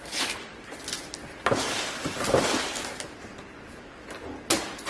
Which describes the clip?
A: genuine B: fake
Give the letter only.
A